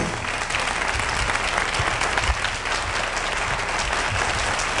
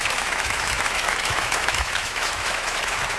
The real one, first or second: first